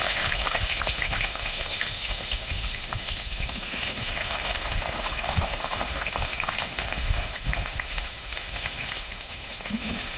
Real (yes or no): no